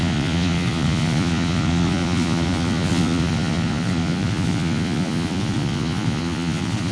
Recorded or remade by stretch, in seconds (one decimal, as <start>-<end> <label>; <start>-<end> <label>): 0.0-6.9 remade

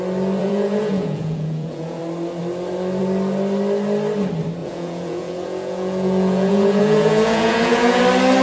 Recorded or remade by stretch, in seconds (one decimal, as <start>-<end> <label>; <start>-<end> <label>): 0.0-0.4 recorded; 0.4-2.0 remade; 2.0-4.6 recorded; 4.6-8.0 remade; 8.0-8.4 recorded

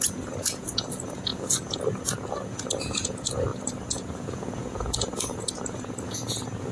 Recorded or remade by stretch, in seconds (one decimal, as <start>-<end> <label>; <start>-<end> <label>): 0.0-6.7 remade

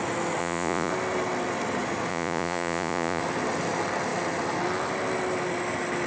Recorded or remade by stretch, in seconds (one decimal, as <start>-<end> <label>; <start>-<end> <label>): 0.0-0.4 recorded; 0.4-0.9 remade; 0.9-2.1 recorded; 2.1-3.2 remade; 3.2-6.1 recorded

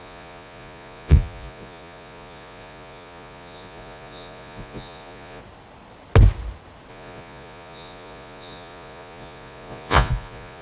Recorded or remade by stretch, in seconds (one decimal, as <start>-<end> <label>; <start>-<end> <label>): 0.0-5.4 remade; 5.4-6.9 recorded; 6.9-10.6 remade

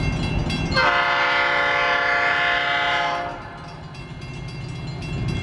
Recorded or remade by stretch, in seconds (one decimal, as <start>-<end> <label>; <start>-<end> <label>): 0.0-5.4 recorded

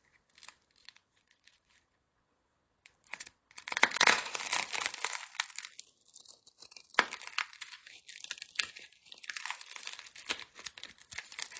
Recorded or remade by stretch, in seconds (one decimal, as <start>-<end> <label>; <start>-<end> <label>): 0.0-0.8 recorded; 0.8-4.4 remade; 4.4-11.6 recorded

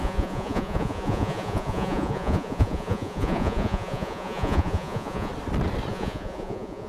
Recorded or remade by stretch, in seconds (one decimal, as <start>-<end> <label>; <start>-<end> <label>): 0.0-5.3 remade; 5.3-5.9 recorded; 5.9-6.9 remade